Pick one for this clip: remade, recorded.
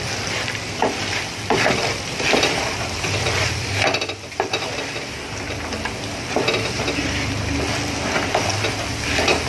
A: remade